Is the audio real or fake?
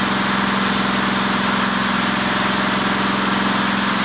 real